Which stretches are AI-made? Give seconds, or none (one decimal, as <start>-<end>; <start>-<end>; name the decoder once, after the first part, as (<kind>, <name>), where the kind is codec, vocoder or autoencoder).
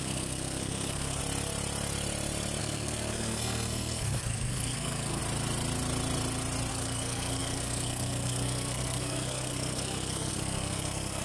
0.0-1.2 (codec, SNAC); 2.6-5.2; 6.7-11.2